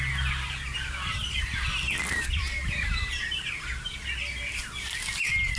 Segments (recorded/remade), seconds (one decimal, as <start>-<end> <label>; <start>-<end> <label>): 0.0-5.6 recorded